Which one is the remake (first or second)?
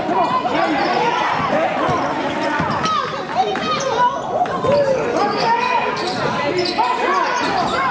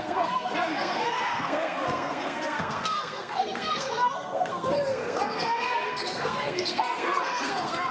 second